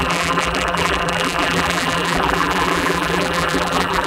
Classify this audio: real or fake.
fake